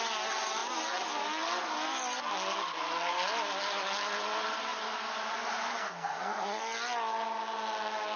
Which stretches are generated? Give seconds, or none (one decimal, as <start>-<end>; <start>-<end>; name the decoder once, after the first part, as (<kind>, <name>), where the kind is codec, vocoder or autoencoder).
5.7-6.6 (codec, SNAC)